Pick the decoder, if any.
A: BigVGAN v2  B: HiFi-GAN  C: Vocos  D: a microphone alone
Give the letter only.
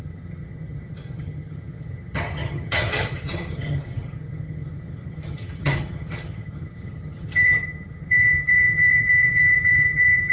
B